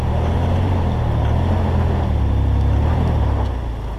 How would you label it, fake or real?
real